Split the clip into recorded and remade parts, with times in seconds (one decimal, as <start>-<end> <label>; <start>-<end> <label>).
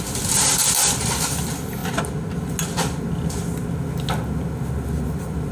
0.0-1.8 remade; 1.8-5.1 recorded; 5.1-5.5 remade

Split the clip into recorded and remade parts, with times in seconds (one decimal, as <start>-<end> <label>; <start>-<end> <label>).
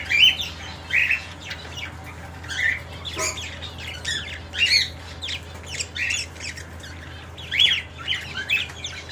0.0-1.0 recorded; 1.0-1.5 remade; 1.5-9.1 recorded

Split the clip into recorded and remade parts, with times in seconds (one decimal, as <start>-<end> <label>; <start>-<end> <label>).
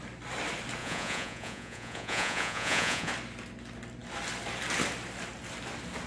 0.0-0.8 recorded; 0.8-3.1 remade; 3.1-6.1 recorded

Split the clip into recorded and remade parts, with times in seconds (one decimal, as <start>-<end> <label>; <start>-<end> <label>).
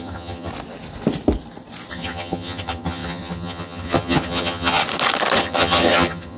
0.0-0.5 remade; 0.5-1.9 recorded; 1.9-4.8 remade; 4.8-5.4 recorded; 5.4-6.4 remade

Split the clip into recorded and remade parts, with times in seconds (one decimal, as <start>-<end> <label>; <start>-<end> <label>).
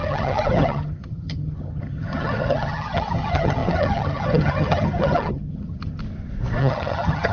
0.0-6.0 remade; 6.0-6.6 recorded; 6.6-7.3 remade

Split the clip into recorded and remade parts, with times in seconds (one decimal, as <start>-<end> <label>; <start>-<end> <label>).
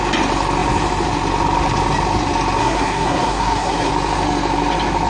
0.0-2.6 recorded; 2.6-3.9 remade; 3.9-5.1 recorded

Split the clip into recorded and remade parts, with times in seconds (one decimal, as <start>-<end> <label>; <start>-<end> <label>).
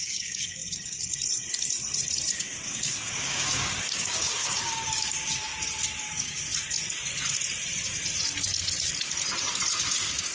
0.0-0.6 remade; 0.6-2.3 recorded; 2.3-5.5 remade; 5.5-6.0 recorded; 6.0-6.5 remade; 6.5-9.8 recorded; 9.8-10.3 remade